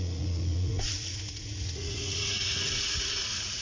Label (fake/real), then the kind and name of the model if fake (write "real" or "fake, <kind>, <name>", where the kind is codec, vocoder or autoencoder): fake, vocoder, Vocos